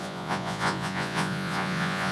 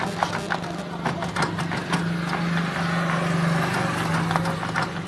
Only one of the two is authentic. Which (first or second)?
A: second